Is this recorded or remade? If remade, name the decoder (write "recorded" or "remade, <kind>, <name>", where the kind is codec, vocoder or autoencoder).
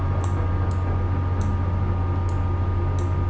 recorded